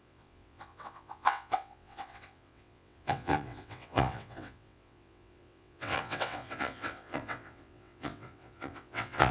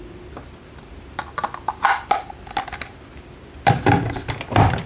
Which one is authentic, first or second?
second